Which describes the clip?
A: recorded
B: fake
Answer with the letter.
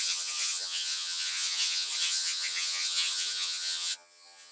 B